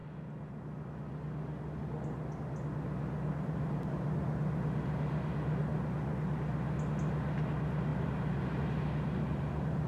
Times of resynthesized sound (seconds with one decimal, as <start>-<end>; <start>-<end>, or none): 3.3-4.2; 7.9-9.9